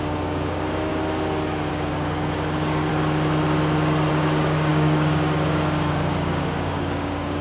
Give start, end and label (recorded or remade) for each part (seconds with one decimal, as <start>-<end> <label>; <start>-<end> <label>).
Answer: 0.0-0.9 remade; 0.9-1.7 recorded; 1.7-2.9 remade; 2.9-4.1 recorded; 4.1-7.4 remade